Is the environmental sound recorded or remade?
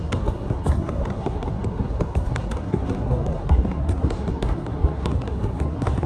remade